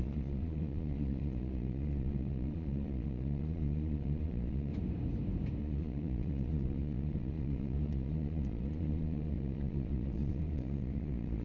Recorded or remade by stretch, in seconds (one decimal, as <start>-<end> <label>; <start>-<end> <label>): 0.0-4.7 remade; 4.7-5.6 recorded; 5.6-11.4 remade